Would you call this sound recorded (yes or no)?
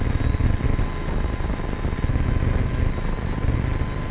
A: yes